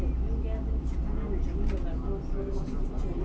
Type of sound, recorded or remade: recorded